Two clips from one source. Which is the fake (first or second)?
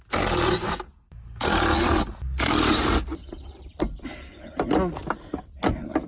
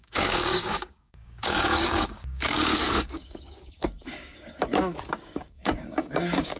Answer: second